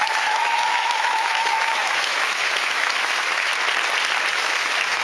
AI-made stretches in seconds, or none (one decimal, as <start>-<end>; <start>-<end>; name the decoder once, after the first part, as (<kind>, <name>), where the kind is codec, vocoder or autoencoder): 0.0-3.5 (autoencoder, DAC-VAE); 4.3-5.0